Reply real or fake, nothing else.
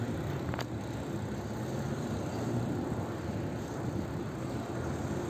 real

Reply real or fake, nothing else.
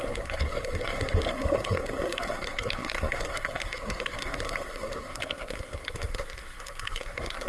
fake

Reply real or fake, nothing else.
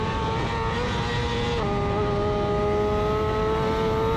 real